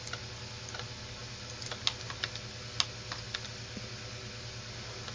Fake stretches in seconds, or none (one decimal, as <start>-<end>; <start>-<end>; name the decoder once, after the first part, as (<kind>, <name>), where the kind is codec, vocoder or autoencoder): none